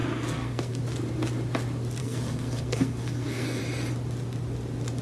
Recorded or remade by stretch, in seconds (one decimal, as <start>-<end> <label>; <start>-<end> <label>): 0.0-0.8 remade; 0.8-2.0 recorded; 2.0-3.6 remade; 3.6-5.0 recorded